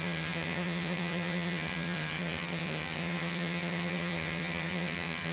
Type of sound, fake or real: fake